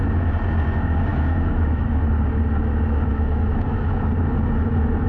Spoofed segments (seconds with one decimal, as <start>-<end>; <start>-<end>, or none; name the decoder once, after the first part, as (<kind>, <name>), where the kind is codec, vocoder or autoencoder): 1.1-1.9 (autoencoder, DAC-VAE); 3.1-3.9

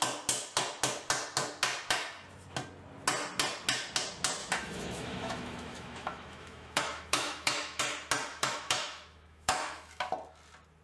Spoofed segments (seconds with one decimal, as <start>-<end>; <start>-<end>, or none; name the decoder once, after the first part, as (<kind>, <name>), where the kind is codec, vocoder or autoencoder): 4.4-7.8 (autoencoder, DAC-VAE); 8.3-10.1

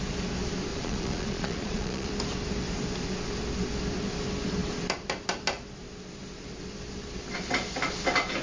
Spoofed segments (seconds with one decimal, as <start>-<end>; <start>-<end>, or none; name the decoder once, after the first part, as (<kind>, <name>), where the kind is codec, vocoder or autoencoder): 0.7-2.1 (vocoder, Vocos)

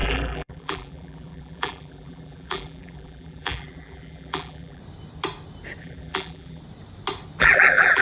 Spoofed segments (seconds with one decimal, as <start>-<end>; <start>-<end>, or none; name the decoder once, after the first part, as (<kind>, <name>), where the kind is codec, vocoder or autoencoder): 0.0-4.8 (vocoder, BigVGAN v2); 5.8-6.6; 7.4-8.0

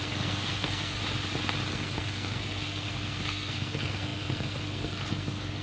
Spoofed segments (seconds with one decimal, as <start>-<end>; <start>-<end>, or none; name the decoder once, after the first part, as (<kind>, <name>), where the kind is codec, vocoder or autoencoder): 0.0-1.0 (codec, SNAC); 1.7-5.6

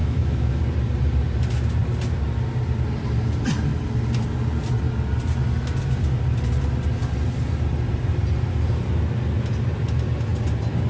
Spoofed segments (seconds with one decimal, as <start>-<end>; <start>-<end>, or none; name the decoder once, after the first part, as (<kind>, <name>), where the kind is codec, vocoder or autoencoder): 0.0-0.6 (autoencoder, DAC-VAE)

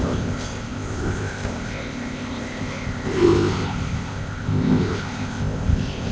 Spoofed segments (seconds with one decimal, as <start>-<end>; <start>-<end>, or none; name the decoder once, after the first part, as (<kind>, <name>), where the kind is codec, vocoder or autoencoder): 0.0-6.1 (codec, ZipCodec)